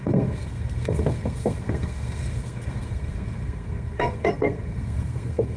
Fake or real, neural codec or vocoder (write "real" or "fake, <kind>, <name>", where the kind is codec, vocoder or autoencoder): fake, codec, SNAC